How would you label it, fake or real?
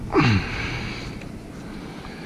real